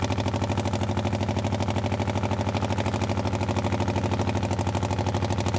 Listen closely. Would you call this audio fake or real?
real